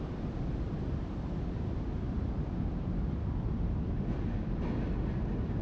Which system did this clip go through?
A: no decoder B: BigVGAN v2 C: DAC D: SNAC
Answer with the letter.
A